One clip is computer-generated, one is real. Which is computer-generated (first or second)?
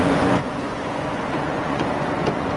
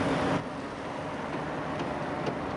first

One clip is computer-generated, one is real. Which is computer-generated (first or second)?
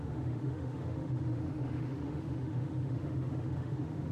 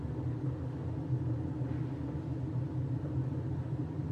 first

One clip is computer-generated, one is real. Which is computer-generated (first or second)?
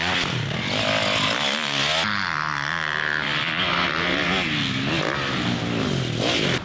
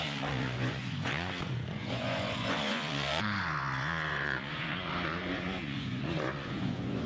second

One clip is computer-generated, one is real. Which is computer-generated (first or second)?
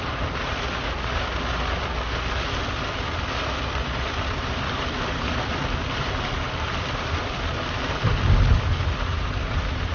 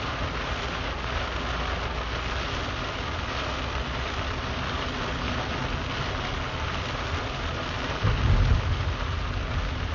first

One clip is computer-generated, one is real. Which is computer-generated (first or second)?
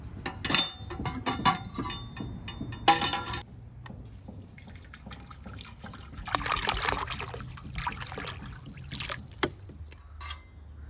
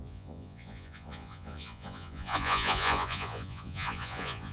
second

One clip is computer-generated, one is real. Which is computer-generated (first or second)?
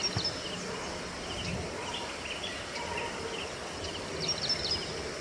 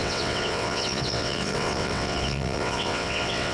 second